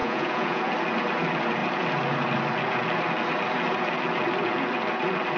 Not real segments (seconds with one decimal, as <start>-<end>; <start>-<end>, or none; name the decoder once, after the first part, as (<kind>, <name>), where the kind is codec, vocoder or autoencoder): 0.0-0.6 (vocoder, Vocos)